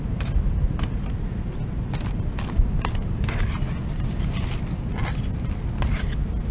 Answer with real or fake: real